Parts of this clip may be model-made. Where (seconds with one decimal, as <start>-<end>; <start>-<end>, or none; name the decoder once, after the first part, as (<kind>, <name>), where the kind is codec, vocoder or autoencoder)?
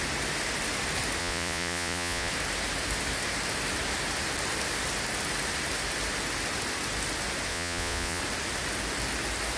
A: 1.2-2.3 (vocoder, Vocos); 7.5-8.2